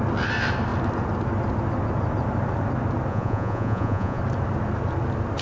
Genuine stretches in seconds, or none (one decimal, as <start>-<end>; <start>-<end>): 0.0-3.1; 4.2-5.4